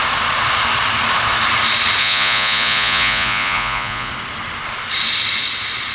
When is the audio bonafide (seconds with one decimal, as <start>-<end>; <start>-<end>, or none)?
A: 0.0-2.0; 4.1-5.9